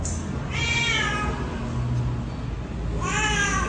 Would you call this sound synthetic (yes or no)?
no